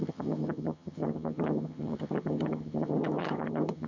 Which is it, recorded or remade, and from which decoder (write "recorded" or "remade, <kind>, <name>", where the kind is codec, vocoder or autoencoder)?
remade, vocoder, HiFi-GAN